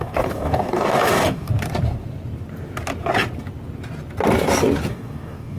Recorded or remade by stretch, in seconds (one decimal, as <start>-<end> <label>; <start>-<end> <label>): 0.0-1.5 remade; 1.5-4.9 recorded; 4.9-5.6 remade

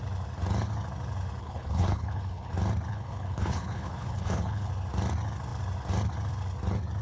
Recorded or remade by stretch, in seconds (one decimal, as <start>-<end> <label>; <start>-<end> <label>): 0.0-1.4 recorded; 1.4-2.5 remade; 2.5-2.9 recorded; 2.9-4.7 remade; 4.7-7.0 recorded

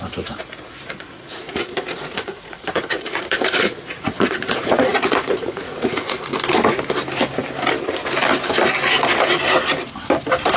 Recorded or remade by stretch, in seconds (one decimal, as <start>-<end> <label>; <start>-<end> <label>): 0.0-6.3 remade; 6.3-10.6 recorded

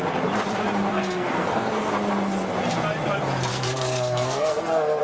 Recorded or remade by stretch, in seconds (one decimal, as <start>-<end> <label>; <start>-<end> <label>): 0.0-0.9 recorded; 0.9-1.9 remade; 1.9-3.5 recorded; 3.5-5.0 remade

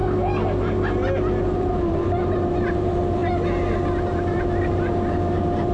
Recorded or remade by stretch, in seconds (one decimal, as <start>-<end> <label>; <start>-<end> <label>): 0.0-1.4 recorded; 1.4-3.2 remade; 3.2-4.0 recorded; 4.0-5.7 remade

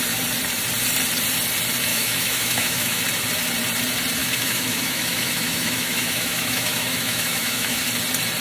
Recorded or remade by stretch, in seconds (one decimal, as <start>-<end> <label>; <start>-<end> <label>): 0.0-1.9 recorded; 1.9-3.0 remade; 3.0-4.2 recorded; 4.2-7.8 remade; 7.8-8.4 recorded